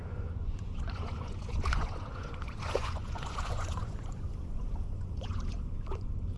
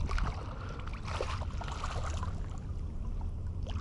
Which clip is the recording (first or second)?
second